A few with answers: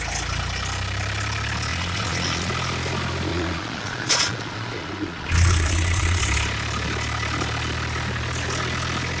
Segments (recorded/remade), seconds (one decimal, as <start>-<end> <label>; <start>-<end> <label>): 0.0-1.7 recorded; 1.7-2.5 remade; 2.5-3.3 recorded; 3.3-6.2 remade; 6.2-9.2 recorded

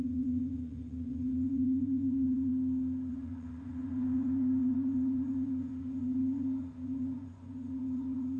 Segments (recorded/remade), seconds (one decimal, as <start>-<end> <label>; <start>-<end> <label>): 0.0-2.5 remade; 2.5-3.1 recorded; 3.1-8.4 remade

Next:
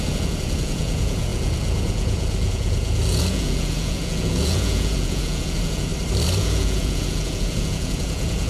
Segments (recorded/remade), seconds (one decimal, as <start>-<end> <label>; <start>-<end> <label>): 0.0-5.9 remade; 5.9-6.4 recorded; 6.4-8.5 remade

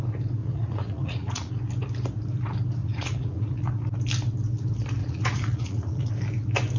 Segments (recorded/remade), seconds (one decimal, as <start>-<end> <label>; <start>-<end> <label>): 0.0-0.4 recorded; 0.4-1.5 remade; 1.5-2.8 recorded; 2.8-3.7 remade; 3.7-5.0 recorded; 5.0-6.1 remade; 6.1-6.8 recorded